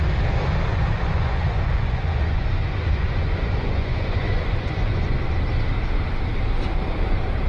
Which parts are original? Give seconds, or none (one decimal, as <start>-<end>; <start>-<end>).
0.0-0.7; 5.2-7.5